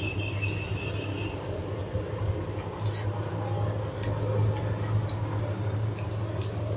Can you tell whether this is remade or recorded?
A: recorded